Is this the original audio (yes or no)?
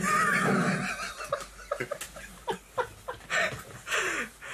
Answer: yes